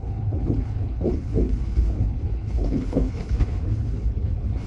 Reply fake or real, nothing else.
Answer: fake